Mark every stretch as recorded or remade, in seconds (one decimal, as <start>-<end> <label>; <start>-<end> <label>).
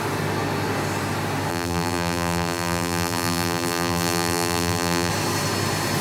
0.0-1.5 recorded; 1.5-5.1 remade; 5.1-6.0 recorded